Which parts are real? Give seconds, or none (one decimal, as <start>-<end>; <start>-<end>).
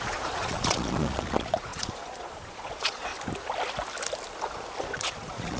3.1-4.8